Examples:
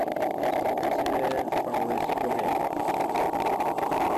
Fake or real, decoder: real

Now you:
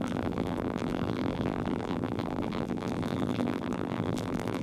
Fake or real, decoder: fake, vocoder, BigVGAN v2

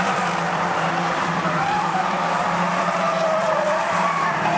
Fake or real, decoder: fake, vocoder, BigVGAN v2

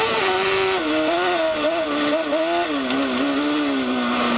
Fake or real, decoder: real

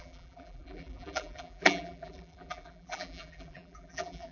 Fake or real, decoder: fake, vocoder, BigVGAN v2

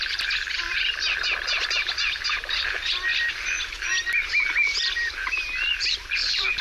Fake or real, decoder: fake, vocoder, BigVGAN v2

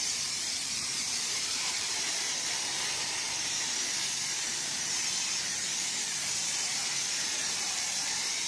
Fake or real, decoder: fake, vocoder, BigVGAN v2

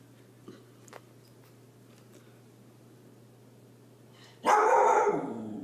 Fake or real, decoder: real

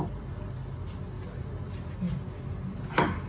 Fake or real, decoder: real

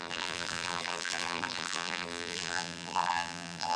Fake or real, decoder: fake, vocoder, BigVGAN v2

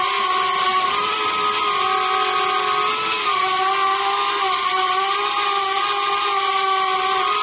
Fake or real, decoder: real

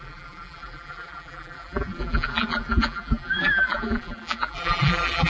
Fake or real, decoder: fake, vocoder, BigVGAN v2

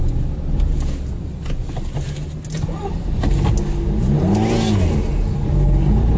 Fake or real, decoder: real